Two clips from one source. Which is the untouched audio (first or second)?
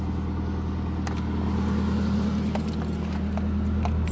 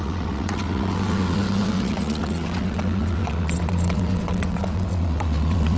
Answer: first